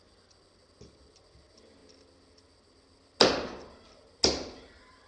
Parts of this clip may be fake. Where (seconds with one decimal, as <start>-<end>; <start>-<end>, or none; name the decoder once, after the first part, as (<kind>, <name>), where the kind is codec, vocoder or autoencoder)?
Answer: none